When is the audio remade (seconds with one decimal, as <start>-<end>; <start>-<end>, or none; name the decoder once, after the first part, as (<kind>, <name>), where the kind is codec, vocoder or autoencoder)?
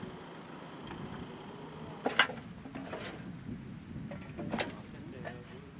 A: none